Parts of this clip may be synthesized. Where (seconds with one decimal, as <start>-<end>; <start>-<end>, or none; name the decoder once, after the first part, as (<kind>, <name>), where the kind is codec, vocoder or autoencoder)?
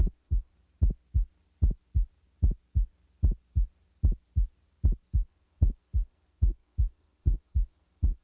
0.0-0.5 (codec, SNAC); 5.1-8.2